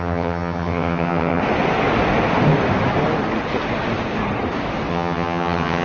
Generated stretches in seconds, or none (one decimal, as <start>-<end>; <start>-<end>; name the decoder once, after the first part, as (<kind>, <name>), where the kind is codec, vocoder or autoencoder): 0.0-1.4 (vocoder, HiFi-GAN); 4.9-5.8